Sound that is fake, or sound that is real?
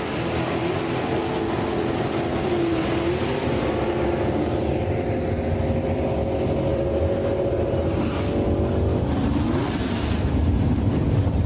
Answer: real